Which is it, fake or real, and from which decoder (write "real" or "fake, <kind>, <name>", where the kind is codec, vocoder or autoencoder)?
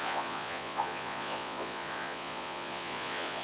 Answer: fake, vocoder, Vocos